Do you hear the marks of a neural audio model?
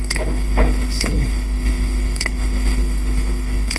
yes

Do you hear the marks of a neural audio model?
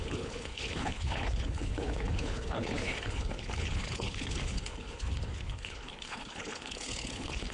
yes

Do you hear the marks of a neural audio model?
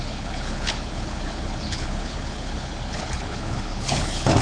yes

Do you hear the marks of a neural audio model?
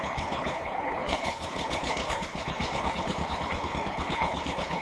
yes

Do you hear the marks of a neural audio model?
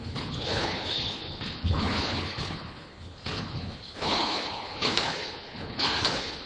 yes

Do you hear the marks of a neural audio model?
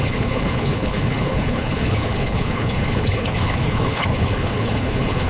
yes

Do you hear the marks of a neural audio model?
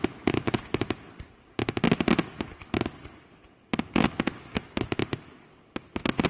no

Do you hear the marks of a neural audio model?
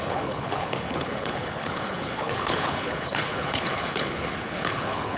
yes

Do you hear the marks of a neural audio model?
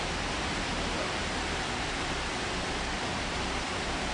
no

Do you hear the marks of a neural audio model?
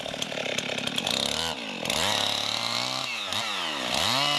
no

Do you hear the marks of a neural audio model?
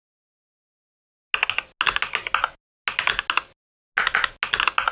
no